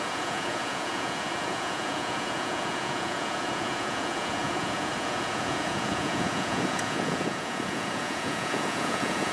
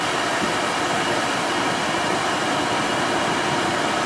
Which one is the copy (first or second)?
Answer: first